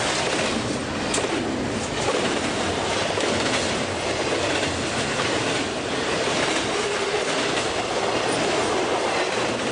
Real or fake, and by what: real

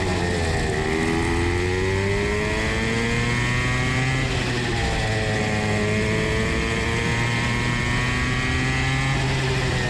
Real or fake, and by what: real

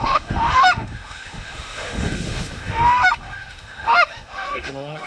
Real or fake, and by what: fake, autoencoder, DAC-VAE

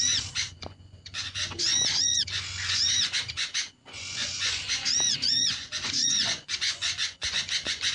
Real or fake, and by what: fake, vocoder, Vocos